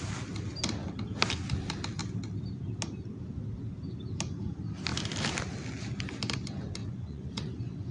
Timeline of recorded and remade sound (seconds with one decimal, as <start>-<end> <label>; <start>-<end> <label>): 0.0-6.8 recorded; 6.8-7.9 remade